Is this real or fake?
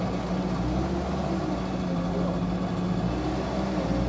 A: real